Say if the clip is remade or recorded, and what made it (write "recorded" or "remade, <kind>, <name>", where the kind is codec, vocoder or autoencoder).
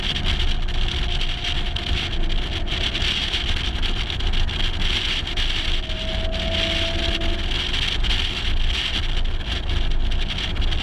recorded